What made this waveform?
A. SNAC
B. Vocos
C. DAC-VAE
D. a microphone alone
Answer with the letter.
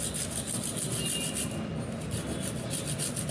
D